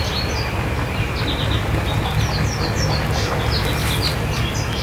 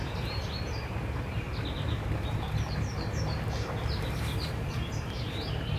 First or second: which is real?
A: first